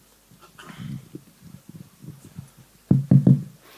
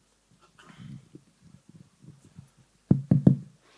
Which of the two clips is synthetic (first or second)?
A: second